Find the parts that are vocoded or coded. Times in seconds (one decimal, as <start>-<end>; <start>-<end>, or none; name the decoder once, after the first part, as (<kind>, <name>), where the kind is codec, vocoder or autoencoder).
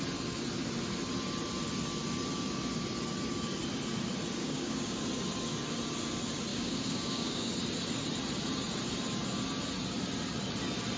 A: 4.4-5.0 (codec, DAC); 6.5-7.5